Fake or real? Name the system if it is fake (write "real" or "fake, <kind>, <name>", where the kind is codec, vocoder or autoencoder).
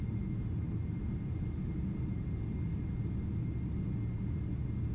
real